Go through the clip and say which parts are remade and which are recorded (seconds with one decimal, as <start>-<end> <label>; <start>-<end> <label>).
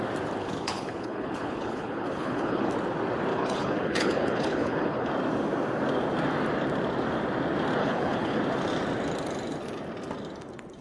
0.0-0.4 recorded; 0.4-2.7 remade; 2.7-3.3 recorded; 3.3-5.1 remade; 5.1-7.8 recorded; 7.8-8.4 remade; 8.4-10.8 recorded